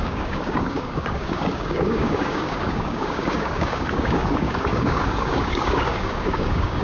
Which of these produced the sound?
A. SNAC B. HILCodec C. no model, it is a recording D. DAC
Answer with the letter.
D